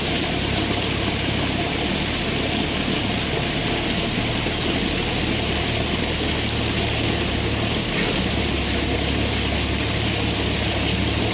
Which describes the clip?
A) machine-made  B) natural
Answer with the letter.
B